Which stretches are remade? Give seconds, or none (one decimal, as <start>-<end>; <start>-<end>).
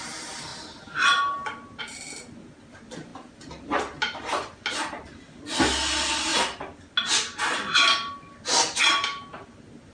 none